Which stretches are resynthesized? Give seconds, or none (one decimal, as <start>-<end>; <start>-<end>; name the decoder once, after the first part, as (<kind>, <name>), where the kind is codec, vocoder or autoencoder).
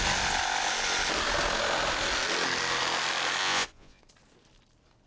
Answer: 3.4-4.0 (vocoder, Vocos)